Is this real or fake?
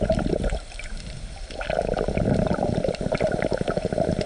real